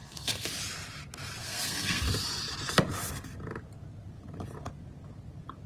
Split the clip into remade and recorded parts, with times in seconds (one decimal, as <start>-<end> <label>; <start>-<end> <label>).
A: 0.0-0.5 remade; 0.5-1.4 recorded; 1.4-2.0 remade; 2.0-5.7 recorded